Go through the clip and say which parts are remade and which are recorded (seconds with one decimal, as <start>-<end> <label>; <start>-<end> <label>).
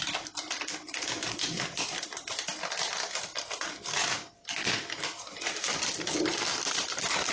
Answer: 0.0-1.2 remade; 1.2-5.6 recorded; 5.6-7.3 remade